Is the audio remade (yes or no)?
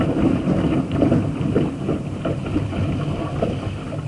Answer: no